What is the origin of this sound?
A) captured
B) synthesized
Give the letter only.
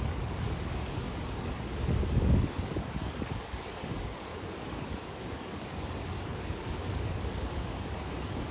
B